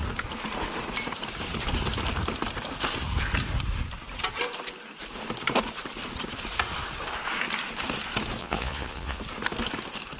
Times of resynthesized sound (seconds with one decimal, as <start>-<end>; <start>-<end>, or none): 8.4-9.2

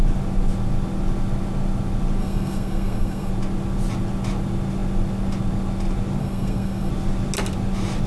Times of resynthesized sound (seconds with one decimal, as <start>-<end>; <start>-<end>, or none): 2.2-3.3; 6.2-6.9

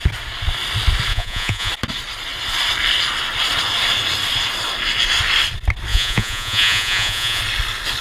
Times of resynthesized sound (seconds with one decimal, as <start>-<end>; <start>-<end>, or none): 1.1-1.7; 5.9-7.4

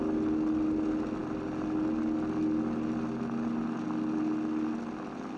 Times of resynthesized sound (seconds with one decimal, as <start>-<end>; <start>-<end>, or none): none

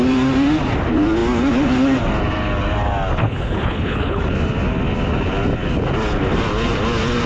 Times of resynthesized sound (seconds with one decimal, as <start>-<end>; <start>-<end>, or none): 3.2-4.2

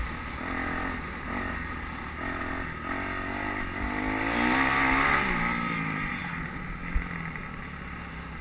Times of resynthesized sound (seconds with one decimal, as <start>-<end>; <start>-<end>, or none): none

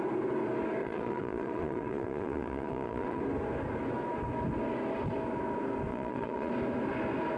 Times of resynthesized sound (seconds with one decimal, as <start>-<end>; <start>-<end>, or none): 0.8-3.2; 5.9-6.5

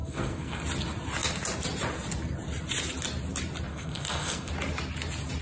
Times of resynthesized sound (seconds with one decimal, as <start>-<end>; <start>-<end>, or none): 0.0-0.6; 3.7-4.5